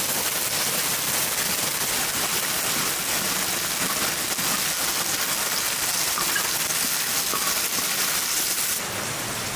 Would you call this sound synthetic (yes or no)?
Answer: no